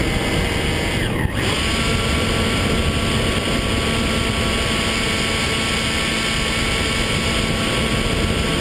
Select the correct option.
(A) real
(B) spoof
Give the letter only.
A